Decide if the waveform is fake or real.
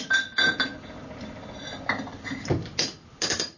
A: real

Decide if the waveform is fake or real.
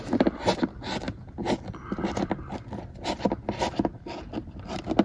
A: real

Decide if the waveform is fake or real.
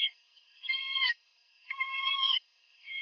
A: fake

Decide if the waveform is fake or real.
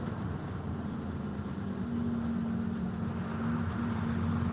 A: real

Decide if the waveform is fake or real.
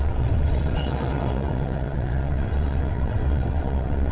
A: fake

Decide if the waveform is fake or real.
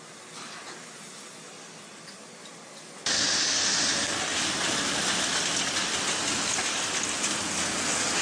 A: real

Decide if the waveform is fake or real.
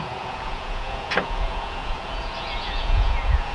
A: fake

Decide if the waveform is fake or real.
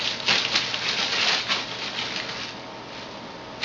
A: real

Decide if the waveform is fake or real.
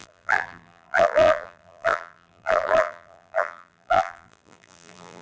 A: fake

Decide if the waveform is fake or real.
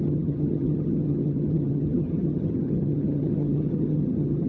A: fake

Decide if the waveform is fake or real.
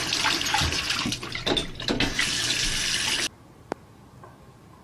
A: real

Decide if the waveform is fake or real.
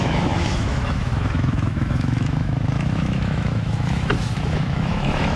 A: fake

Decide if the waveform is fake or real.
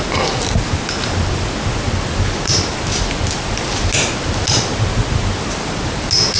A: real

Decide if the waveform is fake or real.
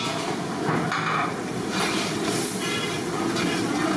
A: real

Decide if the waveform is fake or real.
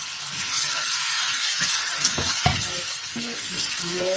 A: fake